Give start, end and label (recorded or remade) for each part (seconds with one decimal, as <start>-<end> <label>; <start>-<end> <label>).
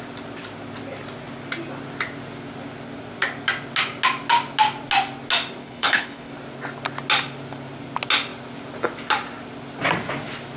0.0-5.6 recorded; 5.6-6.3 remade; 6.3-10.6 recorded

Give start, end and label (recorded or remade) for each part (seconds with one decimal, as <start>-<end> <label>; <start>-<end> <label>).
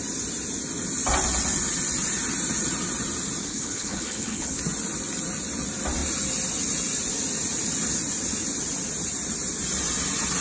0.0-3.4 recorded; 3.4-4.6 remade; 4.6-10.4 recorded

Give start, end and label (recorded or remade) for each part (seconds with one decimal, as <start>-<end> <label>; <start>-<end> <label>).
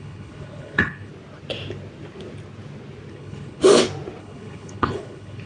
0.0-1.1 remade; 1.1-3.1 recorded; 3.1-3.6 remade; 3.6-4.2 recorded; 4.2-5.5 remade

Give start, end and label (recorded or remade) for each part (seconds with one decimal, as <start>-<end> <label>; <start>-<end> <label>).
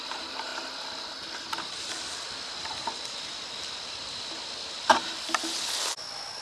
0.0-6.4 recorded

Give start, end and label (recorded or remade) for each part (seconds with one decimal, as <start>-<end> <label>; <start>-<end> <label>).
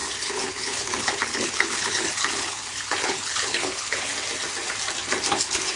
0.0-4.1 remade; 4.1-5.3 recorded; 5.3-5.8 remade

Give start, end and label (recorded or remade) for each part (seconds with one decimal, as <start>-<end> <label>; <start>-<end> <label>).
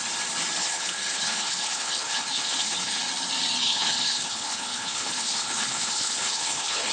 0.0-0.6 recorded; 0.6-3.0 remade; 3.0-3.6 recorded; 3.6-6.9 remade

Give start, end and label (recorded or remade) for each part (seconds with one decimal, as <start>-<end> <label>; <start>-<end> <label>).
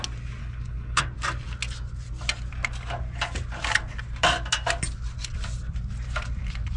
0.0-0.4 recorded; 0.4-1.0 remade; 1.0-6.8 recorded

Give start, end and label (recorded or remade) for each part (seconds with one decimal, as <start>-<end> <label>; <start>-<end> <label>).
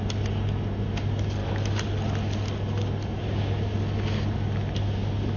0.0-5.4 recorded